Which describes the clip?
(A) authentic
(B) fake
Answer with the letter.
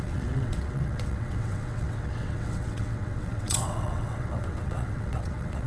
B